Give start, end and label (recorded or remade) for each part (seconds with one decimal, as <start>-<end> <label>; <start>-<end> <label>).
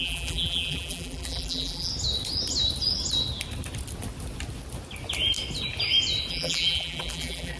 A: 0.0-1.9 remade; 1.9-6.3 recorded; 6.3-7.6 remade